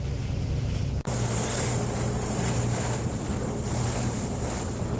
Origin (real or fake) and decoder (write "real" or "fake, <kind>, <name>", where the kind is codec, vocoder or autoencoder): real